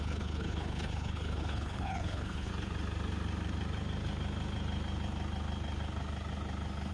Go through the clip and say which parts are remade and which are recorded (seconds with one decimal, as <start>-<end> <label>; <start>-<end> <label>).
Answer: 0.0-2.5 remade; 2.5-6.9 recorded

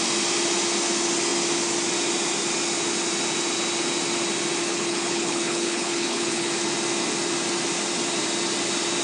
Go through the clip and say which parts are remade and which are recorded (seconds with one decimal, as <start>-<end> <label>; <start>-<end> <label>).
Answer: 0.0-4.7 recorded; 4.7-6.5 remade; 6.5-9.0 recorded

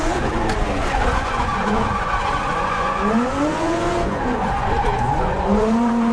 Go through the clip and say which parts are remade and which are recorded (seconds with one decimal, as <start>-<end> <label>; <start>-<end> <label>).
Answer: 0.0-6.1 remade

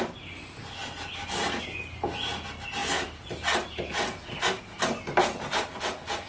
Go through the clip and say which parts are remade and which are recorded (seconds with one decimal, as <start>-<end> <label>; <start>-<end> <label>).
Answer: 0.0-5.2 recorded; 5.2-6.3 remade

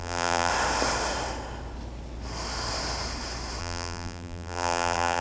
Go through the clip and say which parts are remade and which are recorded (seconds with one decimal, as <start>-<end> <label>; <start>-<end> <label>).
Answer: 0.0-0.5 remade; 0.5-3.6 recorded; 3.6-5.2 remade

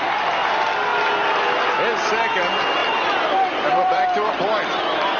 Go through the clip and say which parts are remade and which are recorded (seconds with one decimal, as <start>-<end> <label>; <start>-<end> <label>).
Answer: 0.0-2.8 recorded; 2.8-4.3 remade; 4.3-5.2 recorded

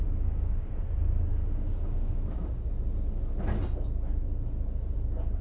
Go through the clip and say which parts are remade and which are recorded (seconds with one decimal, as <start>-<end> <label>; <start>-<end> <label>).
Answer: 0.0-0.7 remade; 0.7-1.3 recorded; 1.3-2.7 remade; 2.7-5.4 recorded

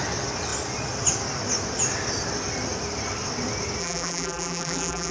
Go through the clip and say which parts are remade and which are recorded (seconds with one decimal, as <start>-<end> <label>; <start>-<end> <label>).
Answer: 0.0-3.8 recorded; 3.8-5.1 remade